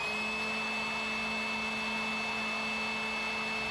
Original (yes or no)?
yes